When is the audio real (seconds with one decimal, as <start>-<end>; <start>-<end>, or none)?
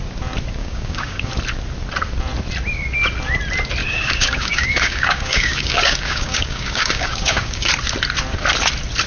0.0-0.6; 1.3-3.8; 7.7-9.1